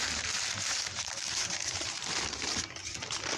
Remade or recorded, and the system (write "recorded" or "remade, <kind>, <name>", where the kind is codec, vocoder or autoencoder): remade, vocoder, BigVGAN v2